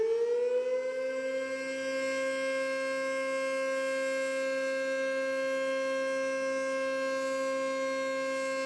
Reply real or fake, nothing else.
real